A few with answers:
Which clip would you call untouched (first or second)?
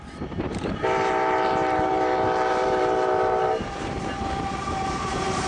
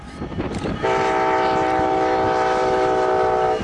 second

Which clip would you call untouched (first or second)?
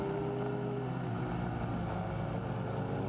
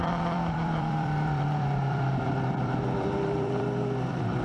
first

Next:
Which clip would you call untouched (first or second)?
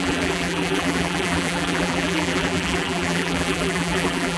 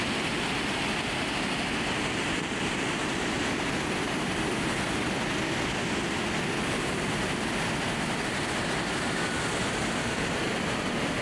second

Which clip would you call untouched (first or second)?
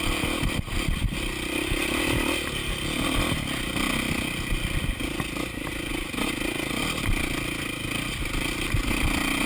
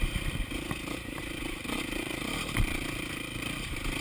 first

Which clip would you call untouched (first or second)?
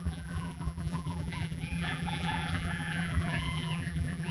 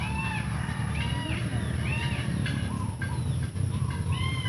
second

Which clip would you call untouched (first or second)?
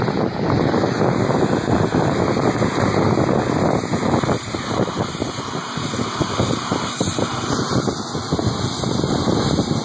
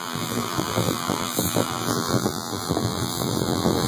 first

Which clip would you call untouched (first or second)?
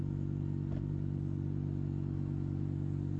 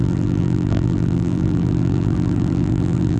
first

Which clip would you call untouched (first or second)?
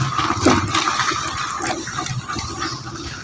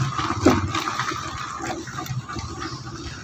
second